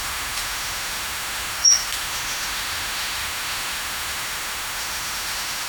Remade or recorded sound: remade